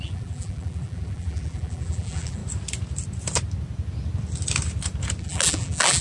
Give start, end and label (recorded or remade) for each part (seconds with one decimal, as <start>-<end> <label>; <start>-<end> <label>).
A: 0.0-2.4 remade; 2.4-5.2 recorded; 5.2-6.0 remade